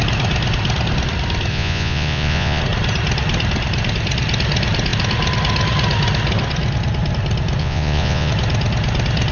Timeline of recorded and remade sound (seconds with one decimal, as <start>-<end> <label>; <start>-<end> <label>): 0.0-1.5 recorded; 1.5-2.6 remade; 2.6-7.6 recorded; 7.6-8.3 remade; 8.3-9.3 recorded